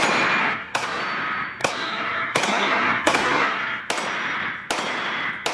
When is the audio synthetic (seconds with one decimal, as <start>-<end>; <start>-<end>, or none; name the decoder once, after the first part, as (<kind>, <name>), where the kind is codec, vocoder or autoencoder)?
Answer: 0.4-1.0 (codec, SNAC); 1.6-3.8